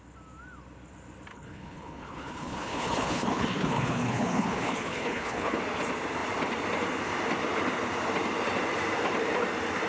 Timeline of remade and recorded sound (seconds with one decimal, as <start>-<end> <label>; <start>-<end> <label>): 0.0-1.3 recorded; 1.3-5.6 remade; 5.6-9.9 recorded